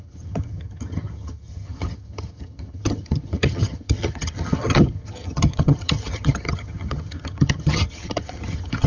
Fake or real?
fake